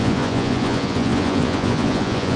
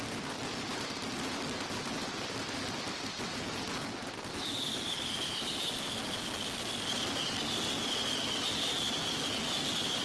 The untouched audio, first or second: second